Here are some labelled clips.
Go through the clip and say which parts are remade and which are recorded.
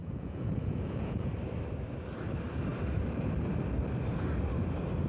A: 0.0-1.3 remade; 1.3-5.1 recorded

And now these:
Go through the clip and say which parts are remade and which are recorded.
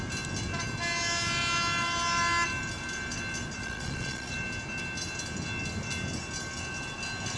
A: 0.0-3.6 recorded; 3.6-4.3 remade; 4.3-7.4 recorded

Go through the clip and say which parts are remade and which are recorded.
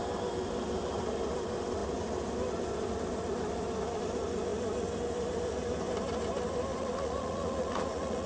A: 0.0-6.7 recorded; 6.7-8.3 remade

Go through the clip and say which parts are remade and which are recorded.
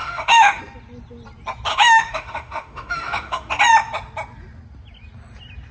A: 0.0-0.6 remade; 0.6-1.7 recorded; 1.7-3.5 remade; 3.5-5.7 recorded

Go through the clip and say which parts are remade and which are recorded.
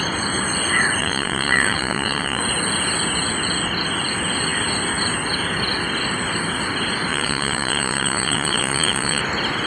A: 0.0-1.0 recorded; 1.0-2.4 remade; 2.4-7.1 recorded; 7.1-9.2 remade; 9.2-9.7 recorded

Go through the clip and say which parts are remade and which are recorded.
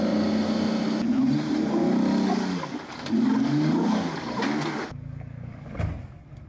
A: 0.0-1.8 recorded; 1.8-5.7 remade; 5.7-6.5 recorded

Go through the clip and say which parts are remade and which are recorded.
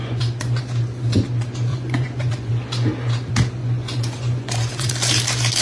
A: 0.0-0.6 remade; 0.6-1.7 recorded; 1.7-2.5 remade; 2.5-3.6 recorded; 3.6-4.9 remade; 4.9-5.6 recorded